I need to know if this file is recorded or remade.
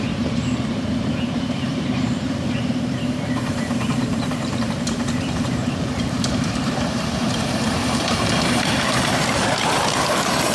remade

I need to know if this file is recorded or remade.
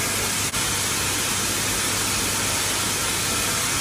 recorded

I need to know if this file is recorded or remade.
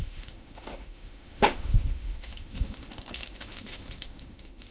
remade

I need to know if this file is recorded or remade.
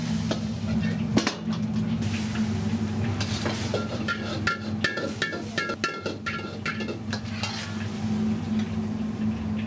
recorded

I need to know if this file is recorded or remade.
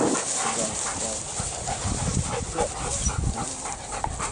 recorded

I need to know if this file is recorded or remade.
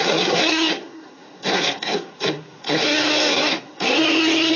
remade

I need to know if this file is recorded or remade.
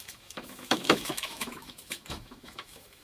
remade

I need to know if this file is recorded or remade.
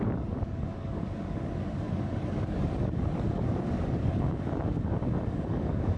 remade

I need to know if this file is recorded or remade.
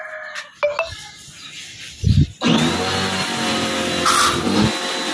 recorded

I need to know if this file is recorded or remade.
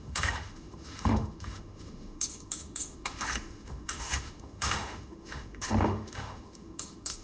remade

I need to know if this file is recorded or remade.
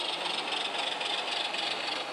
recorded